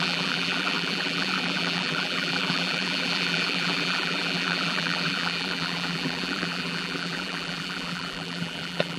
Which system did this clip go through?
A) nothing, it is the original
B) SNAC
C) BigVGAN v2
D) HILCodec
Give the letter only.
C